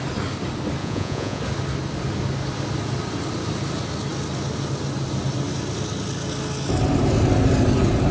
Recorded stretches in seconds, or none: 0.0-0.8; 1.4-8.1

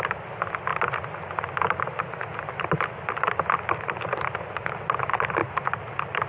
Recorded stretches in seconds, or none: 0.0-6.3